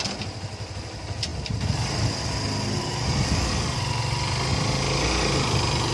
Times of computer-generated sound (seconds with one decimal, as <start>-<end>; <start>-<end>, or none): 0.0-1.3; 4.5-5.9